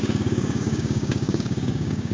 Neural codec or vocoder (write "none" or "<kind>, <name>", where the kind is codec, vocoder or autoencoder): codec, DAC